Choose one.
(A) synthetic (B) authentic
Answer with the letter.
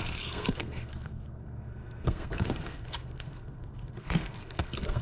A